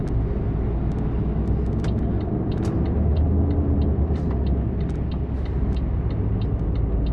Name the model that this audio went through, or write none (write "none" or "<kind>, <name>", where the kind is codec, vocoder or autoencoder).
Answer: none